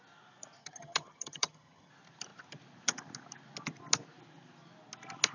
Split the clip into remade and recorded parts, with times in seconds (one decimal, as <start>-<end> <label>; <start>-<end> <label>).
0.0-0.6 recorded; 0.6-1.9 remade; 1.9-5.3 recorded